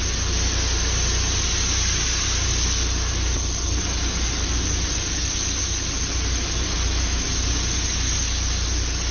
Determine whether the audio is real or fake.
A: real